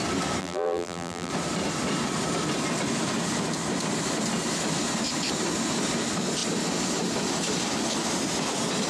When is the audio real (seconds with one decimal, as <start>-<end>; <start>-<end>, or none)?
0.0-0.4; 1.3-8.9